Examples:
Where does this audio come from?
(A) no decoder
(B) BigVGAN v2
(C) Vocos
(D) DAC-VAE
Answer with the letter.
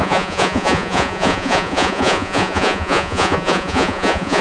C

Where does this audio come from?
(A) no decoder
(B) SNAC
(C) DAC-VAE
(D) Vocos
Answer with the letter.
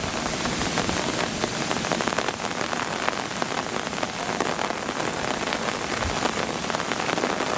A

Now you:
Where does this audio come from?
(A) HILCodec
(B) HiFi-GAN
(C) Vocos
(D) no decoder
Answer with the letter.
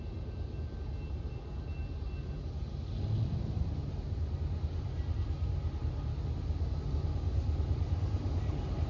D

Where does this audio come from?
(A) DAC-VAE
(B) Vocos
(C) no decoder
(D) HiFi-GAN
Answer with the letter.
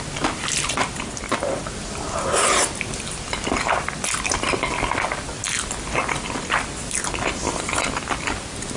C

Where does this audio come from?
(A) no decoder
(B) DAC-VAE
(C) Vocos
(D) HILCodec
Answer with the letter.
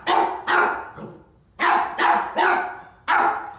A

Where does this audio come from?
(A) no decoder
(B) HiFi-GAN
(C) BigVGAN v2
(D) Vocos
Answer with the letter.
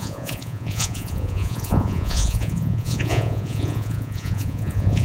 D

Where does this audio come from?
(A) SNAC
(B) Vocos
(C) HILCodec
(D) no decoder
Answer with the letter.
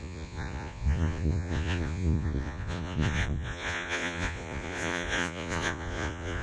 B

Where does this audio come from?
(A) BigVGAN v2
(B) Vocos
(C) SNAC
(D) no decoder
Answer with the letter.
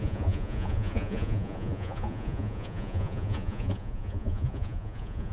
B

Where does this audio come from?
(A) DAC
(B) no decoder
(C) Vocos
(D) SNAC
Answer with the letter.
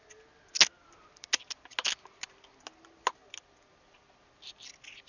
B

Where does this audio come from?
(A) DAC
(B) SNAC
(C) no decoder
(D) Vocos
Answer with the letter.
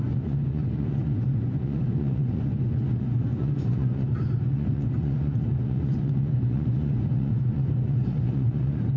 D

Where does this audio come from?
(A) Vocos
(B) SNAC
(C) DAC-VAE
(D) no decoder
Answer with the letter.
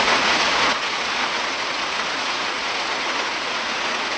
A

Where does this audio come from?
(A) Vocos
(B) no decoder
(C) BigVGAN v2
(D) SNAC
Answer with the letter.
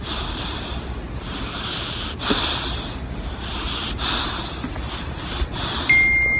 B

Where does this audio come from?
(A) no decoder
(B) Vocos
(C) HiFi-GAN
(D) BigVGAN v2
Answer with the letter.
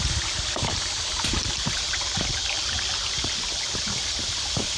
A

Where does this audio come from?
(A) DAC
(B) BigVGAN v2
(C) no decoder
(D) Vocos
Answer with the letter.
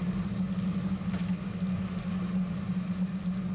C